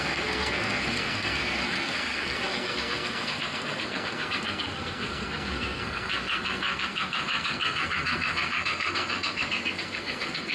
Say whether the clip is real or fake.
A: fake